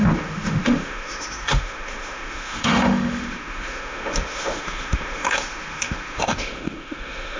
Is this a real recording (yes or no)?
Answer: no